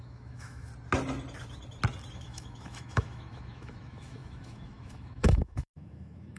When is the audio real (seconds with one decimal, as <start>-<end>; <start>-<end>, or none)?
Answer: 0.7-2.1